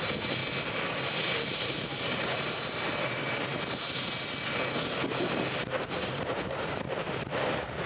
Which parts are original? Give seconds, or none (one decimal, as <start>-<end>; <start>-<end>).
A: 0.4-1.1; 3.5-6.0